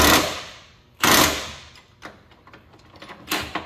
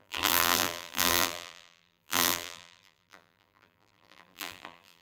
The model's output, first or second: second